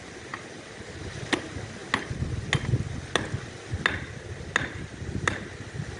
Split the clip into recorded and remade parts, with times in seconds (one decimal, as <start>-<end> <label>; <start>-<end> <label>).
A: 0.0-6.0 recorded